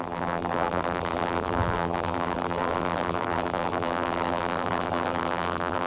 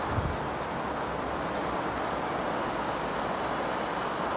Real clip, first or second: second